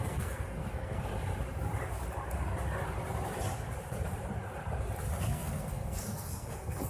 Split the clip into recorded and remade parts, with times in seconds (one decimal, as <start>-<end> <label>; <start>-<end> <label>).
0.0-1.1 remade; 1.1-5.2 recorded; 5.2-6.9 remade